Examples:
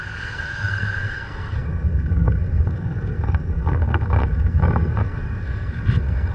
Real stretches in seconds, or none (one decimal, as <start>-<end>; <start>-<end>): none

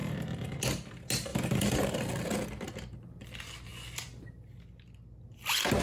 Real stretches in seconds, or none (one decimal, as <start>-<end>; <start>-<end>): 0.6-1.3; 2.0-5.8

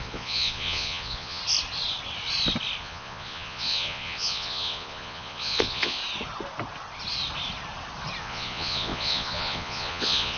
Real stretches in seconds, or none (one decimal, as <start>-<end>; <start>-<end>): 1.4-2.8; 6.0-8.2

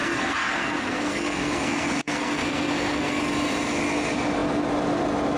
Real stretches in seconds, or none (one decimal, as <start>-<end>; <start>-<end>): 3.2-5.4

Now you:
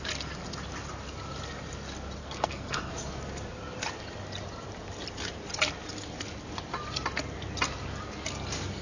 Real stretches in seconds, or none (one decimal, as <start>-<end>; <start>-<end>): 0.0-2.2; 2.9-8.8

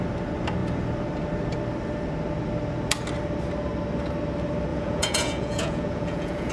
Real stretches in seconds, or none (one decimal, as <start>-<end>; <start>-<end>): 0.0-4.7

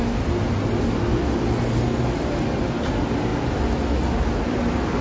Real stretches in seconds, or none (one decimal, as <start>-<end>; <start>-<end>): 0.0-5.0

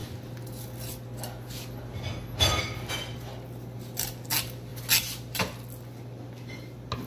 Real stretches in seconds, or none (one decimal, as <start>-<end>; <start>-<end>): 0.0-7.1